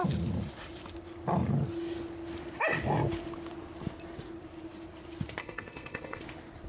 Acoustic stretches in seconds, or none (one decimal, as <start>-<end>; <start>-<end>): 0.0-5.4; 6.2-6.7